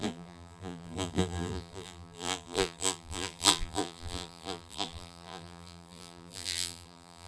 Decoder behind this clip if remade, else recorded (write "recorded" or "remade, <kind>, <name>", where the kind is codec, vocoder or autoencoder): remade, vocoder, BigVGAN v2